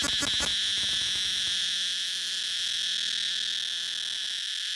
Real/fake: real